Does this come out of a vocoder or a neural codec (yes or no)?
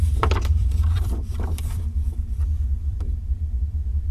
yes